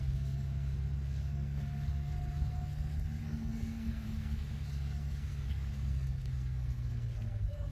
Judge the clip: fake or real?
fake